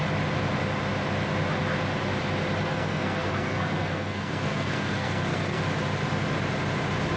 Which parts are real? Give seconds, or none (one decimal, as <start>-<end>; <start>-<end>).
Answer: 0.0-2.7; 5.6-7.2